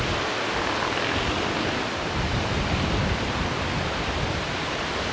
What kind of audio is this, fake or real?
real